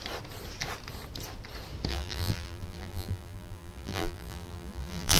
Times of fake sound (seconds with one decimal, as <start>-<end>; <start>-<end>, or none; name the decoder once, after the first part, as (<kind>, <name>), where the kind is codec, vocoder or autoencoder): 1.9-5.2 (vocoder, BigVGAN v2)